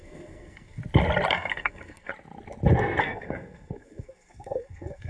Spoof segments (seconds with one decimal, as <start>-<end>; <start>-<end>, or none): 0.0-0.8; 1.3-2.1; 3.0-5.1